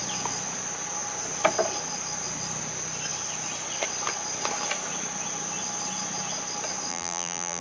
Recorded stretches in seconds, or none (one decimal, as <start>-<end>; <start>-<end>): 0.0-6.9